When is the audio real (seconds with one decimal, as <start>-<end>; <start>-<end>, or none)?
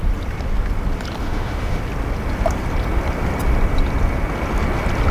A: 0.0-1.2; 1.8-5.1